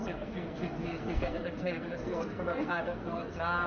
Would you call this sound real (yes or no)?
no